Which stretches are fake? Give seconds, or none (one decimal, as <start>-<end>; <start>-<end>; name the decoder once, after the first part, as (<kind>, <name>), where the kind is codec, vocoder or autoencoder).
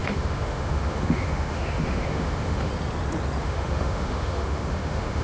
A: 0.0-2.7 (autoencoder, DAC-VAE); 3.4-5.2